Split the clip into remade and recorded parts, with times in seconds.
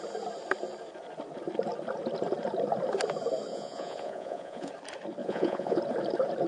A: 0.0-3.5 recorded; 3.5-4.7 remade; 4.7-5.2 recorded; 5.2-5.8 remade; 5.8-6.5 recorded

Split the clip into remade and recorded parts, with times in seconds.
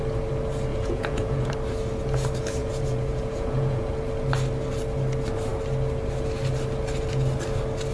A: 0.0-0.7 recorded; 0.7-1.5 remade; 1.5-2.6 recorded; 2.6-3.9 remade; 3.9-7.9 recorded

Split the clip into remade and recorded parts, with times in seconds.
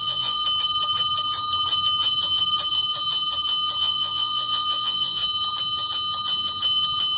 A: 0.0-0.4 remade; 0.4-3.8 recorded; 3.8-5.2 remade; 5.2-7.2 recorded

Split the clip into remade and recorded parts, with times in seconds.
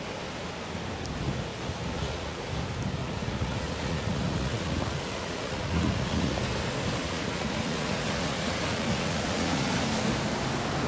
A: 0.0-1.5 recorded; 1.5-2.5 remade; 2.5-3.0 recorded; 3.0-6.4 remade; 6.4-7.0 recorded; 7.0-9.7 remade; 9.7-10.9 recorded